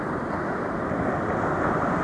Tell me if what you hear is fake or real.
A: real